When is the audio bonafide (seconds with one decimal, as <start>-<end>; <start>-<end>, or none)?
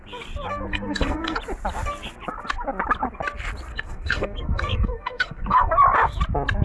0.0-0.7; 1.4-3.7; 5.8-6.6